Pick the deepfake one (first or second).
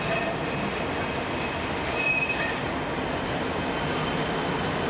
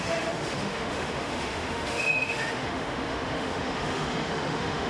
second